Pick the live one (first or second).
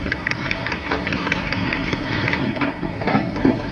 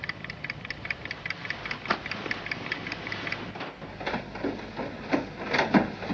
second